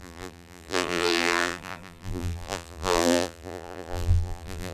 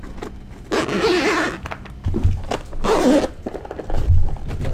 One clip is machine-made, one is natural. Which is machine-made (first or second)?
first